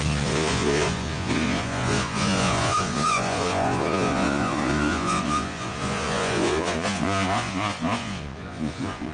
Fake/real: fake